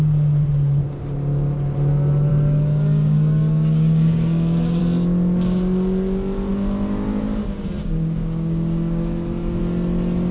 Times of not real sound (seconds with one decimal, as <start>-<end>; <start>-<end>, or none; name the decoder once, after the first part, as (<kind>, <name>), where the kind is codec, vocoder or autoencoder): 2.3-4.8 (codec, DAC); 7.8-9.6